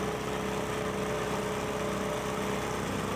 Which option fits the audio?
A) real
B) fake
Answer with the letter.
A